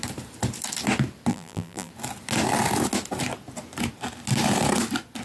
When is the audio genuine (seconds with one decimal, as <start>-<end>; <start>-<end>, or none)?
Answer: 0.0-1.3; 1.9-5.2

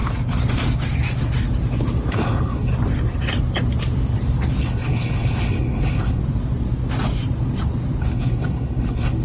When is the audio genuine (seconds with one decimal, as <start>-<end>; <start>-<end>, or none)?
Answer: 0.0-2.1; 2.7-4.6; 6.2-8.0

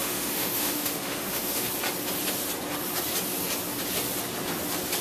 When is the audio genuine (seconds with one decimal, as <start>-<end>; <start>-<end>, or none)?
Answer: 1.7-5.0

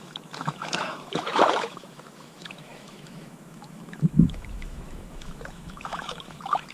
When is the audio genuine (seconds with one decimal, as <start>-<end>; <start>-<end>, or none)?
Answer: none

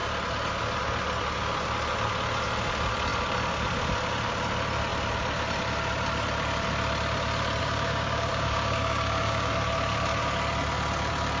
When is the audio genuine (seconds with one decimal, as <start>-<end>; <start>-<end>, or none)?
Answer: 0.0-7.6; 9.5-11.4

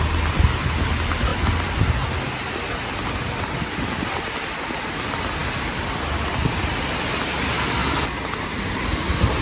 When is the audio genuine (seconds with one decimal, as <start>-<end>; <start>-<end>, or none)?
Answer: 0.0-1.3; 1.9-5.4; 6.6-9.4